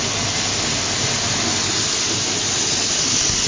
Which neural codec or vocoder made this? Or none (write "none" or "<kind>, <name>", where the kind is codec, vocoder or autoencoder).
none